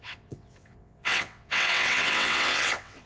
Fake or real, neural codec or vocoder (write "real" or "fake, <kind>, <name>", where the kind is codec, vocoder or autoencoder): fake, vocoder, WaveNeXt